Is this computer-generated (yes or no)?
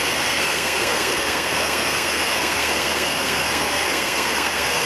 yes